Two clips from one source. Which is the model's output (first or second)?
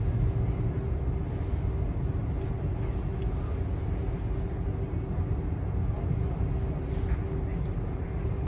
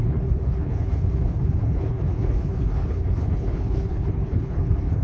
second